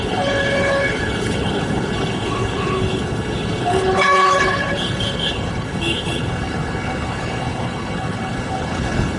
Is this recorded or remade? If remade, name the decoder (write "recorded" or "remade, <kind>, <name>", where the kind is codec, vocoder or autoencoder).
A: remade, codec, HILCodec